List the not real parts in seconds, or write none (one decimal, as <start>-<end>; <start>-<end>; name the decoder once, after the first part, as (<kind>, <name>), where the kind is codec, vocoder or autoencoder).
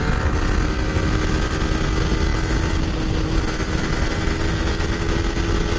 none